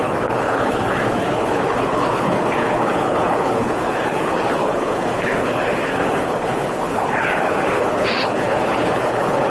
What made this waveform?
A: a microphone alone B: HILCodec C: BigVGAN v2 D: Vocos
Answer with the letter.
B